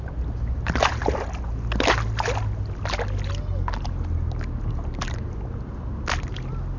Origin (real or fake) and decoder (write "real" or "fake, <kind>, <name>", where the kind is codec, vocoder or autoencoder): real